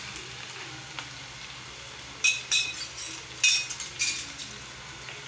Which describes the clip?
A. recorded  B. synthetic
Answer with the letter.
A